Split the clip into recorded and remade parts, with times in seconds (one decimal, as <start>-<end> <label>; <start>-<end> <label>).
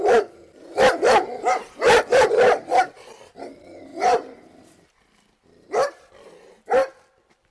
0.0-6.8 recorded; 6.8-7.5 remade